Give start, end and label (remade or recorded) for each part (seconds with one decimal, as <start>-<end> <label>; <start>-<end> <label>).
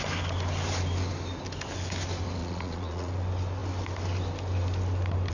0.0-2.4 recorded; 2.4-3.1 remade; 3.1-5.3 recorded